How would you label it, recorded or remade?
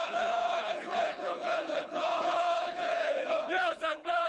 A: remade